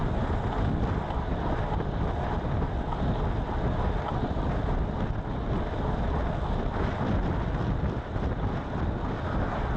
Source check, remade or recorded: recorded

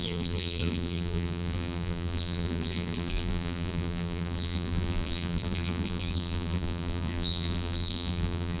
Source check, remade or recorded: remade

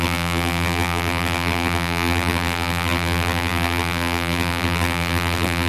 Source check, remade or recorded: remade